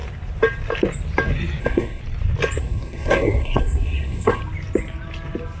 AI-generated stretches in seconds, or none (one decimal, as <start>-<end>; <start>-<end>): 1.6-2.0; 2.6-4.4